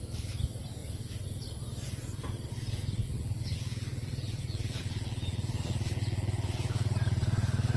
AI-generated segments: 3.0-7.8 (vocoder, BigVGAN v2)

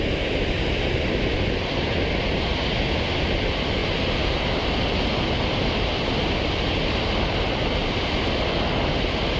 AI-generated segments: 7.8-8.5 (vocoder, BigVGAN v2)

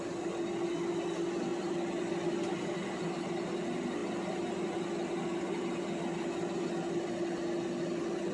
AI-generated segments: none

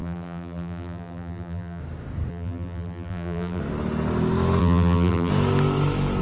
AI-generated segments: 0.0-1.8 (vocoder, BigVGAN v2); 2.3-3.6; 4.6-5.3